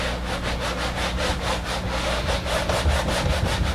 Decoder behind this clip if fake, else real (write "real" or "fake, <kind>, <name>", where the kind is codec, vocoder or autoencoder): real